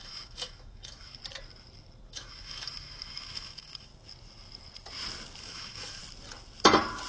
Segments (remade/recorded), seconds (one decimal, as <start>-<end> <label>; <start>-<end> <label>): 0.0-1.2 remade; 1.2-2.1 recorded; 2.1-3.9 remade; 3.9-5.4 recorded; 5.4-6.0 remade; 6.0-7.1 recorded